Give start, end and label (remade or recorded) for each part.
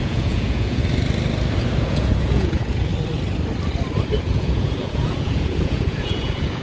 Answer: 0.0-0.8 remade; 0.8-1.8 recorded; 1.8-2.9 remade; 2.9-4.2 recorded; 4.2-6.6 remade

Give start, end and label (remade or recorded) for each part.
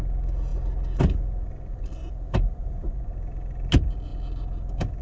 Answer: 0.0-2.6 recorded; 2.6-3.1 remade; 3.1-5.0 recorded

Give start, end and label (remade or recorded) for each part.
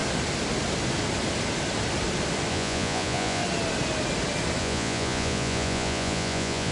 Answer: 0.0-2.5 recorded; 2.5-3.4 remade; 3.4-4.6 recorded; 4.6-6.7 remade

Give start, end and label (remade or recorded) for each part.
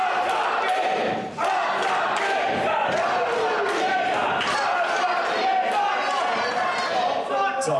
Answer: 0.0-7.8 recorded